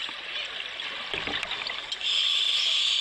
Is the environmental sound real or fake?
real